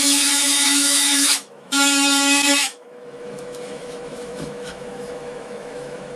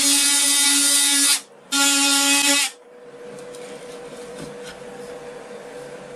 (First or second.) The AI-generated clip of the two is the first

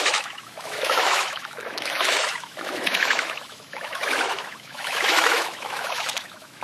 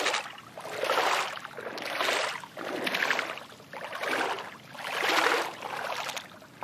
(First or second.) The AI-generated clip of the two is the first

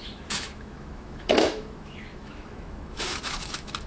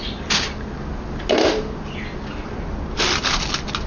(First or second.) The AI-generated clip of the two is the first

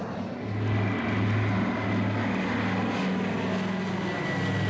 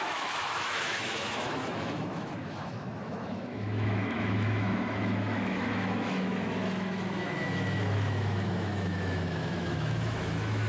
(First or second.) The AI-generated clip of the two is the second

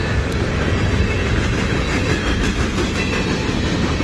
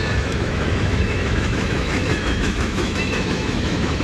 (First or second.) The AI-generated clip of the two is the second